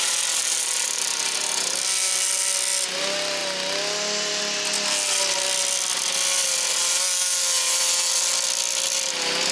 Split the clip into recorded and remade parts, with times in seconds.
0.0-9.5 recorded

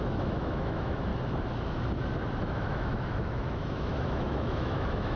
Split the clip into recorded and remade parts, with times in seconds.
0.0-1.1 remade; 1.1-2.4 recorded; 2.4-5.2 remade

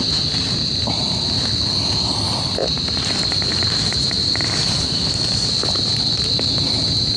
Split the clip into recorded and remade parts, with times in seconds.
0.0-7.2 recorded